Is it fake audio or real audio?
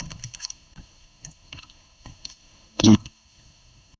fake